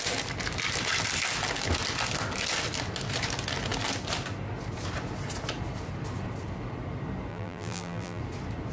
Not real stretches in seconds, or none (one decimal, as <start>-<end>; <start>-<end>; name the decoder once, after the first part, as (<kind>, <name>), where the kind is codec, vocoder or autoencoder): 7.3-8.2 (vocoder, BigVGAN v2)